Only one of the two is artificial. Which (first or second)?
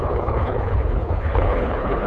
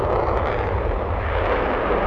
first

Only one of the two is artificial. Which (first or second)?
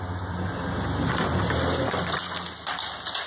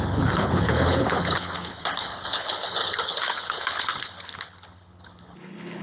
second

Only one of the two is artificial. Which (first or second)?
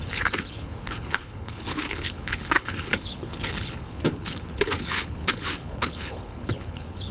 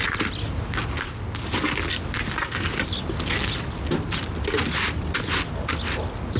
first